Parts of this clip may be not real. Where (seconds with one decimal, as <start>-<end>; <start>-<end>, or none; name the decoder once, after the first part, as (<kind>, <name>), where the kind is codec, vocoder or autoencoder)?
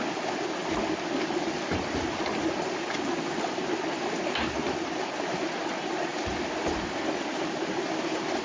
none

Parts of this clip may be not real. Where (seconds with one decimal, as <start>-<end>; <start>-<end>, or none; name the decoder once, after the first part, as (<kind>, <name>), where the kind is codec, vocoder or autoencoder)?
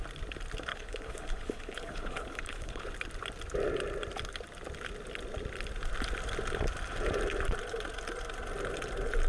0.7-2.9 (codec, HILCodec)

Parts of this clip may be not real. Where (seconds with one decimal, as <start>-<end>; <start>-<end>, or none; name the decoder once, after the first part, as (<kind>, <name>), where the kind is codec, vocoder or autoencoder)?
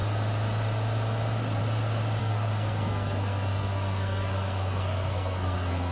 2.2-5.9 (codec, SNAC)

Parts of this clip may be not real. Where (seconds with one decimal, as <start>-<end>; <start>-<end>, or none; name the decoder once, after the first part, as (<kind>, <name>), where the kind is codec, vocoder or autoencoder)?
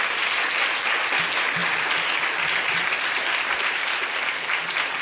none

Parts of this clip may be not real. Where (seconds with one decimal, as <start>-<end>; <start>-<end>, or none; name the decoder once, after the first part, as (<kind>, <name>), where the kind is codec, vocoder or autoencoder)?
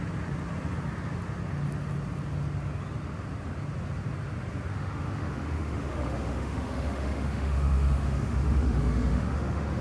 4.7-9.8 (autoencoder, DAC-VAE)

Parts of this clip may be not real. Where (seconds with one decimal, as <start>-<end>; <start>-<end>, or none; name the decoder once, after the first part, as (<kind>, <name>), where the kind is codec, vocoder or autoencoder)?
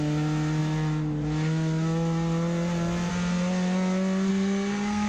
4.3-5.1 (codec, SNAC)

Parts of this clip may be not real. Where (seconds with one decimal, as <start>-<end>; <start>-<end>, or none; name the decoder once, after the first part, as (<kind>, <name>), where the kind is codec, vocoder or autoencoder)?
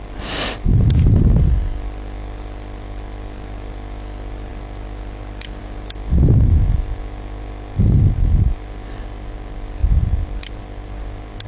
none